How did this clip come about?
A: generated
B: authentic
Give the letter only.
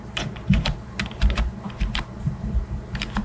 A